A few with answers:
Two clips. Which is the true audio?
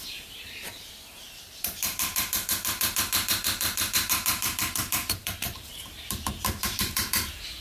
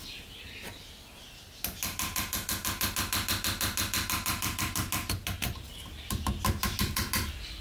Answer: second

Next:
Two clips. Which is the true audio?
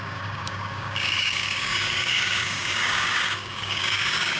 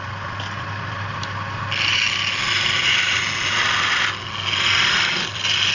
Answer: second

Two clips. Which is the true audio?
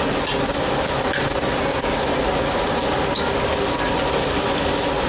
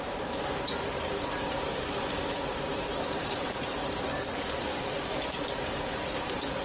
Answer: first